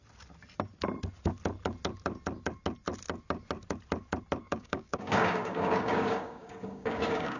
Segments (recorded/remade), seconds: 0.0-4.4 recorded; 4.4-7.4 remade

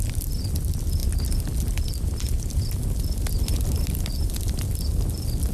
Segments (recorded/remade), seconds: 0.0-5.5 recorded

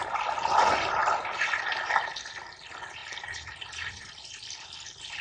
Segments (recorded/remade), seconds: 0.0-1.0 recorded; 1.0-2.1 remade; 2.1-3.0 recorded; 3.0-3.9 remade; 3.9-5.2 recorded